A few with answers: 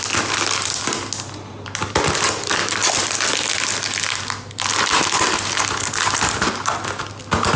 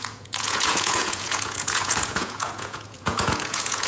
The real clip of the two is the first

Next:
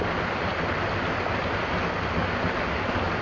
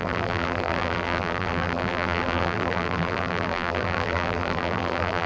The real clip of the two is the first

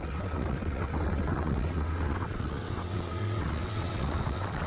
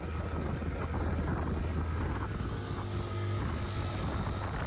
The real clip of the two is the second